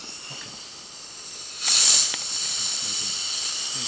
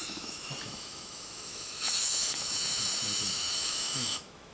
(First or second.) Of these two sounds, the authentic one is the first